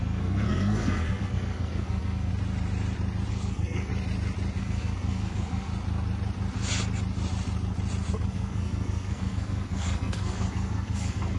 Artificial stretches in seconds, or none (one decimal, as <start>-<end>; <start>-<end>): 0.0-2.3; 3.3-3.9; 4.6-5.7; 8.1-11.4